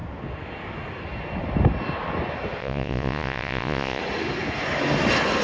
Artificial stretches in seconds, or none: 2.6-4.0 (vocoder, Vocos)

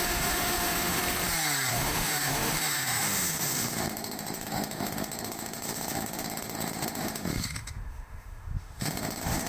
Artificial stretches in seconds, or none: 0.0-1.0 (autoencoder, DAC-VAE); 1.7-9.5

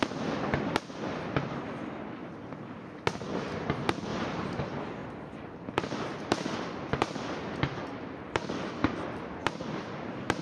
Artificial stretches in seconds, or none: 4.1-4.6 (vocoder, BigVGAN v2); 5.0-6.9